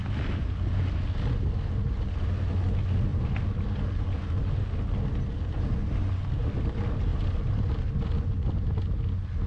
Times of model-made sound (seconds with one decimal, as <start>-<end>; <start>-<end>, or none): none